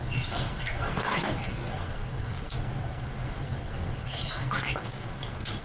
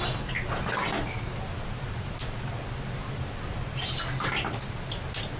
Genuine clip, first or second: second